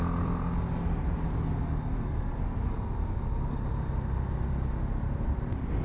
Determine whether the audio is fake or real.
real